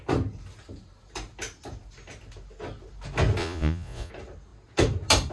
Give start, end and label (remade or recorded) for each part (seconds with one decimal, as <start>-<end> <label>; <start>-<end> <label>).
0.0-3.4 recorded; 3.4-4.1 remade; 4.1-5.3 recorded